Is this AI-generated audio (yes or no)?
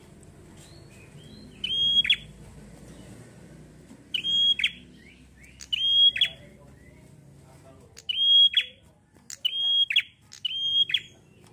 no